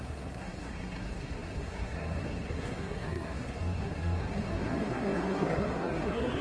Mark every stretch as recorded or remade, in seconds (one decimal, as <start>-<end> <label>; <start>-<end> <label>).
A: 0.0-6.4 remade